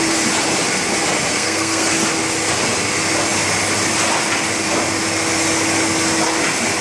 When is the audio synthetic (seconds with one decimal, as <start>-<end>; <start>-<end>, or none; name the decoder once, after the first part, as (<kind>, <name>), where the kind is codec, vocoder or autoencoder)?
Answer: 1.3-1.9 (codec, SNAC)